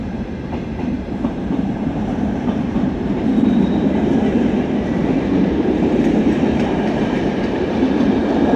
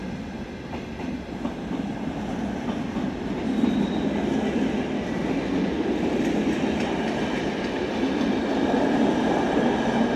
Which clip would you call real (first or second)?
second